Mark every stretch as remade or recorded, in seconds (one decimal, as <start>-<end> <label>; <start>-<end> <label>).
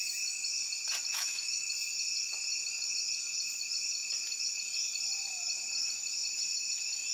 0.0-1.1 recorded; 1.1-1.7 remade; 1.7-7.1 recorded